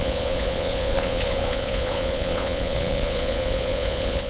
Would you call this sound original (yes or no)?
no